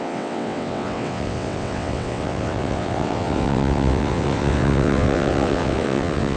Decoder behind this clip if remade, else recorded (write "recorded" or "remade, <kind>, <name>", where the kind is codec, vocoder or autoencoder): remade, vocoder, WaveNeXt